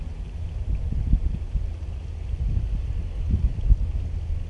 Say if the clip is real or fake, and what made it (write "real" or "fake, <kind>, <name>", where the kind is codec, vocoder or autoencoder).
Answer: real